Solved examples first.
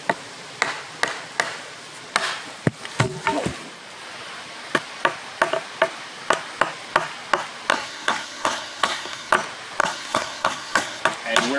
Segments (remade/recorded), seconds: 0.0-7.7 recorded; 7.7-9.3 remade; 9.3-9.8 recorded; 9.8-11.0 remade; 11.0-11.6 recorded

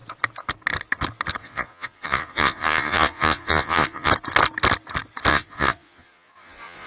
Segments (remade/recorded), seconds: 0.0-1.4 recorded; 1.4-4.1 remade; 4.1-5.3 recorded; 5.3-6.9 remade

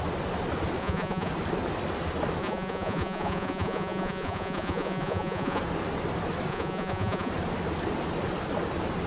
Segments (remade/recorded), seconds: 0.0-0.8 recorded; 0.8-1.3 remade; 1.3-2.4 recorded; 2.4-5.6 remade; 5.6-6.5 recorded; 6.5-7.3 remade; 7.3-9.1 recorded

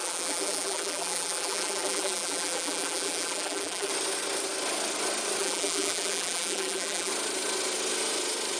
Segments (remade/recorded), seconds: 0.0-3.9 remade; 3.9-5.4 recorded; 5.4-7.1 remade; 7.1-8.6 recorded

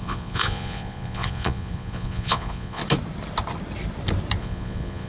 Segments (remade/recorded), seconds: 0.0-2.8 remade; 2.8-4.4 recorded; 4.4-5.1 remade

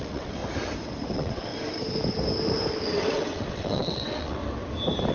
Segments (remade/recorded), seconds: 0.0-0.4 remade; 0.4-1.1 recorded; 1.1-1.5 remade; 1.5-3.0 recorded; 3.0-4.4 remade; 4.4-5.1 recorded

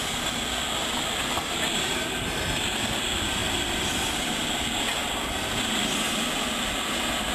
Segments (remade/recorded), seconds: 0.0-0.5 recorded; 0.5-3.4 remade; 3.4-4.6 recorded; 4.6-5.0 remade; 5.0-5.6 recorded; 5.6-7.3 remade

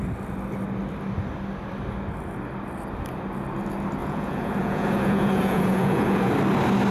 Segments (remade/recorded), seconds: 0.0-4.0 recorded; 4.0-6.3 remade; 6.3-6.9 recorded